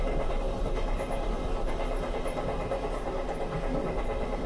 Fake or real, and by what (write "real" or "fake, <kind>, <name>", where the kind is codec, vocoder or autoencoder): real